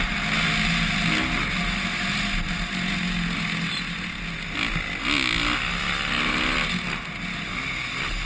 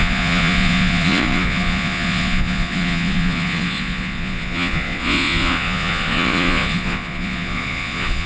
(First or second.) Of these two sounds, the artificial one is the second